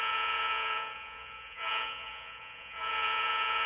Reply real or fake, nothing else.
fake